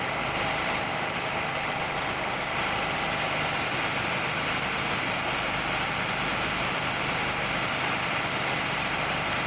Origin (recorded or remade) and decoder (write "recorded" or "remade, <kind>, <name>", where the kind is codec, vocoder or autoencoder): recorded